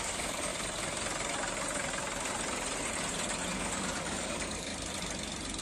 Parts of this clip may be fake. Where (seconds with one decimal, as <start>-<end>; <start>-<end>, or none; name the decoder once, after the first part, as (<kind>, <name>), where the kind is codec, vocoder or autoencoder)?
0.0-0.5 (codec, DAC); 3.5-4.7